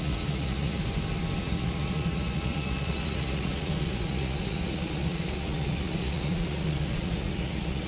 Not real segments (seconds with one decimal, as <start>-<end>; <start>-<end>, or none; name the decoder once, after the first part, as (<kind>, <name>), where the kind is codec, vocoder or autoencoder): 0.0-0.8 (vocoder, Vocos); 1.4-7.9